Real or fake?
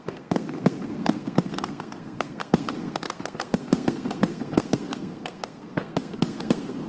fake